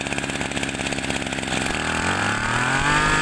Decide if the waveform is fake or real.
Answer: real